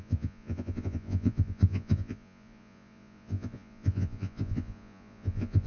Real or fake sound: fake